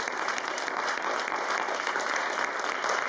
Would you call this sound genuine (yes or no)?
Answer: yes